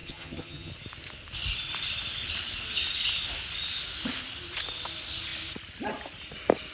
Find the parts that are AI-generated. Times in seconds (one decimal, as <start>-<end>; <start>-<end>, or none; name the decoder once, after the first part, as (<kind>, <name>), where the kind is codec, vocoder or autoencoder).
0.0-0.7 (vocoder, HiFi-GAN)